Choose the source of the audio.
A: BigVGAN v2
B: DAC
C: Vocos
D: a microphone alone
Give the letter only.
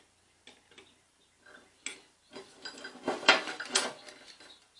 D